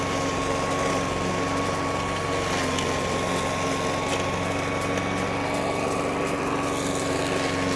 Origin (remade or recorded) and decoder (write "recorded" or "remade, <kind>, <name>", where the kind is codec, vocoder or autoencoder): recorded